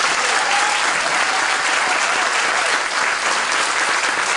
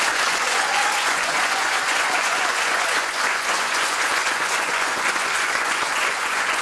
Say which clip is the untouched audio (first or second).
first